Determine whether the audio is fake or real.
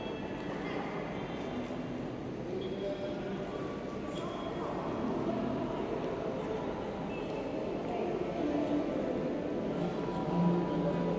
real